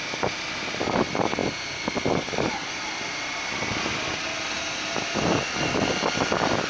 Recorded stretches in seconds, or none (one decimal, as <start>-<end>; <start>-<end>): 0.0-6.7